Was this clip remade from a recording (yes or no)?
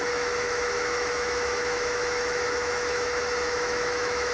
yes